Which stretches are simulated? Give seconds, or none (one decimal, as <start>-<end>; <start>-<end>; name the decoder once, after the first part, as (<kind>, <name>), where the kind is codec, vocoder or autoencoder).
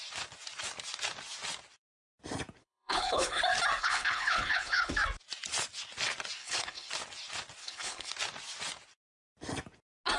2.6-3.4 (codec, HILCodec); 3.8-4.9; 6.4-6.9; 7.6-8.1